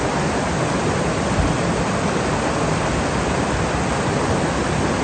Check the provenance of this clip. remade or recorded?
recorded